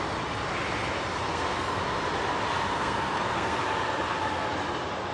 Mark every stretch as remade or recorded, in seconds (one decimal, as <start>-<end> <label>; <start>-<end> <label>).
0.0-1.3 recorded; 1.3-1.8 remade; 1.8-2.7 recorded; 2.7-3.6 remade; 3.6-5.1 recorded